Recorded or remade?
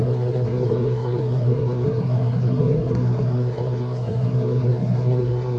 remade